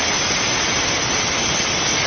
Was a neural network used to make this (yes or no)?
no